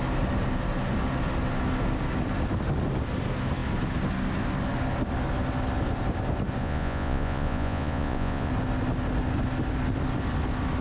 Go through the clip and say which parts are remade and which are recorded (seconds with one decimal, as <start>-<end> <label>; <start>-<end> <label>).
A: 0.0-6.6 recorded; 6.6-8.5 remade; 8.5-10.8 recorded